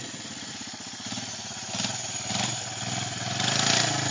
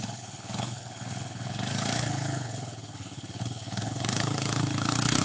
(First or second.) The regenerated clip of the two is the second